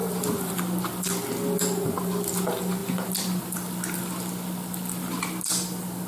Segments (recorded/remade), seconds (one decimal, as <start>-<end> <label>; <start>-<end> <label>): 0.0-0.6 remade; 0.6-6.1 recorded